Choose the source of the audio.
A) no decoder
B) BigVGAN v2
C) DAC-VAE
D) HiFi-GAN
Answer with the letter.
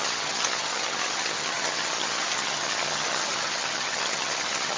D